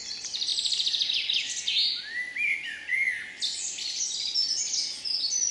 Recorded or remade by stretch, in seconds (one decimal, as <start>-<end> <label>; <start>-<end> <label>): 0.0-5.5 recorded